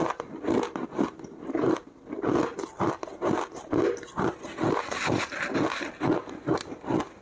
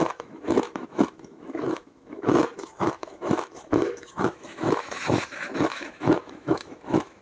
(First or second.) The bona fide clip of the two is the first